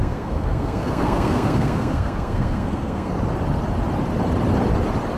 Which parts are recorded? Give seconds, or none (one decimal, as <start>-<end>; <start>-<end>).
3.1-5.2